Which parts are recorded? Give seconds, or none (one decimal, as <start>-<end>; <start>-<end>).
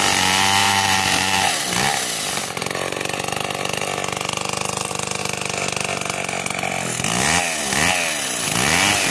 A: 0.0-0.6; 2.0-9.1